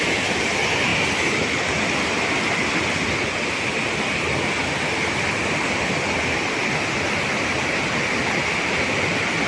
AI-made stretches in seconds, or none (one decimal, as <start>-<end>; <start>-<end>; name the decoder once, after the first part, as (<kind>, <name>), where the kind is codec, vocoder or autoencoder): none